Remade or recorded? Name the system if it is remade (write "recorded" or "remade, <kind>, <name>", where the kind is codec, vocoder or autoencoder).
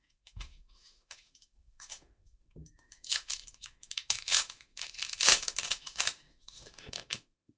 remade, autoencoder, DAC-VAE